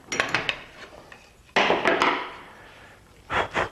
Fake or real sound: real